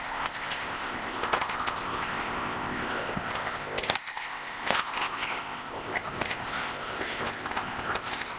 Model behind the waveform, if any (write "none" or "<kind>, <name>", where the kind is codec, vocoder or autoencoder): codec, ZipCodec